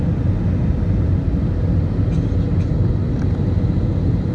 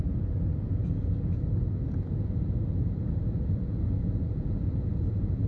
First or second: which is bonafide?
first